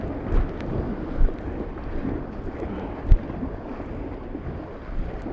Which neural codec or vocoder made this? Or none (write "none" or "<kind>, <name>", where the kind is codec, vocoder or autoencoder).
none